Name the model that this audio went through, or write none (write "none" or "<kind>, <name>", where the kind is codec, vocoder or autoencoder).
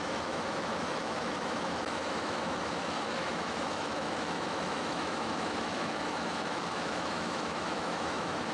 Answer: autoencoder, DAC-VAE